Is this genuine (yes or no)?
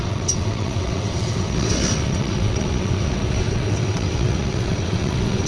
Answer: no